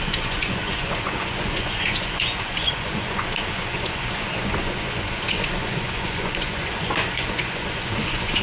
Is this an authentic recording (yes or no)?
no